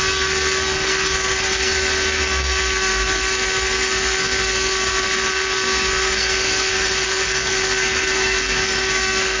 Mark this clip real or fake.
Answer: fake